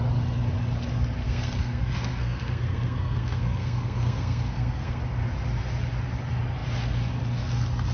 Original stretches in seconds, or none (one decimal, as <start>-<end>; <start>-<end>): 0.0-1.2; 5.0-7.9